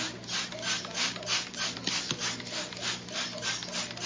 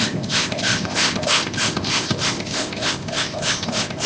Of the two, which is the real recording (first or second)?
first